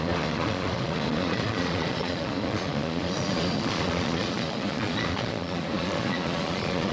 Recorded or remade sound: remade